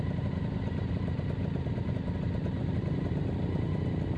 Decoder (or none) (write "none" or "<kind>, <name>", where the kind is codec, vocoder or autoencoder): none